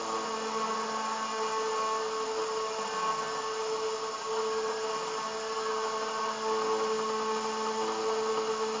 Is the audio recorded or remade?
recorded